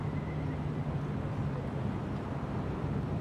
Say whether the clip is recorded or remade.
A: recorded